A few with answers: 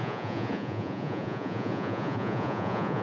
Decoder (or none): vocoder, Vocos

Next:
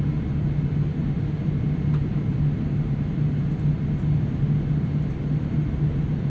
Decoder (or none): none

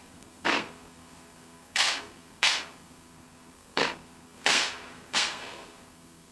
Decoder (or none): codec, SNAC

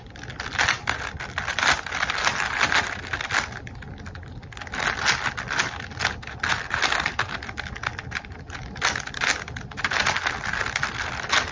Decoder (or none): none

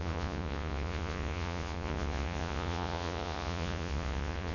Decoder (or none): vocoder, Vocos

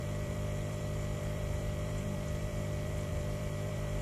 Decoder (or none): vocoder, BigVGAN v2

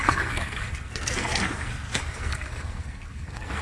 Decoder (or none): codec, SNAC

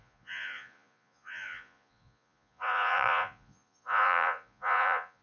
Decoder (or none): vocoder, Vocos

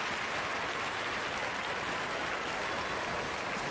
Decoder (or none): none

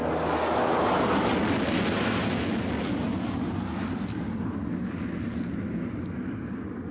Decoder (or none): none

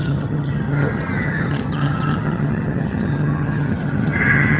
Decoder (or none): vocoder, HiFi-GAN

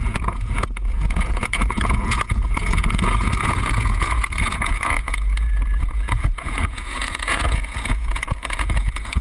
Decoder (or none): vocoder, Vocos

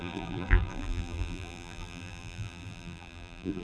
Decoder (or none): vocoder, BigVGAN v2